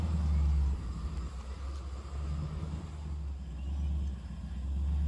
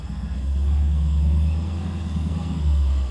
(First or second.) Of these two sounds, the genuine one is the first